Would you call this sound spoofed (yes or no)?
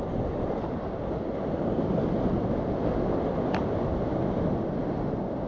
no